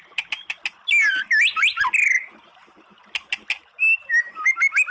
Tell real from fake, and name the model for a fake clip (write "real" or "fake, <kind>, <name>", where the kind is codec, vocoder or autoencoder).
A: real